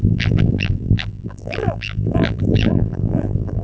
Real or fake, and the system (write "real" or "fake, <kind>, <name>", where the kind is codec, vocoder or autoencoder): fake, vocoder, BigVGAN v2